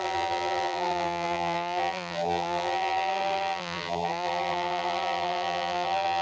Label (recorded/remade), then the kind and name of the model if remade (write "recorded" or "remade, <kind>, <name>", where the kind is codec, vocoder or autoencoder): remade, vocoder, BigVGAN v2